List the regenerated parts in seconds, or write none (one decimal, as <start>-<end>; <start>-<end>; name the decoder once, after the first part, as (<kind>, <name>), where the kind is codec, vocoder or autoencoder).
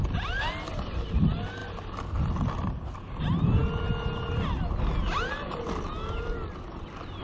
none